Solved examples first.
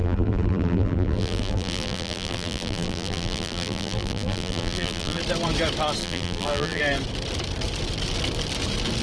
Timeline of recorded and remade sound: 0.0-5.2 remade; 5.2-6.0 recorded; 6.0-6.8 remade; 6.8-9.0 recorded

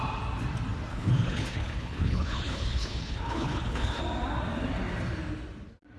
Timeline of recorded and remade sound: 0.0-0.9 recorded; 0.9-4.0 remade; 4.0-6.0 recorded

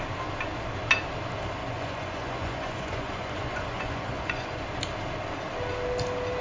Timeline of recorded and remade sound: 0.0-1.6 recorded; 1.6-4.6 remade; 4.6-6.4 recorded